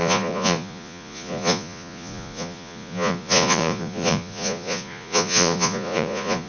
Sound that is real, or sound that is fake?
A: fake